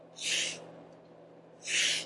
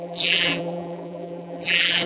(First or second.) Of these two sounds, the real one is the first